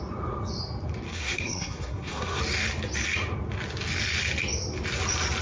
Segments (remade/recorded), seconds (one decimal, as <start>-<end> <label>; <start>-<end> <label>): 0.0-1.1 recorded; 1.1-2.4 remade; 2.4-5.4 recorded